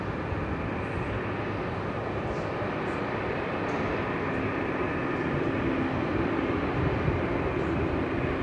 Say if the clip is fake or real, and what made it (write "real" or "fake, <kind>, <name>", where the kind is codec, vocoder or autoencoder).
real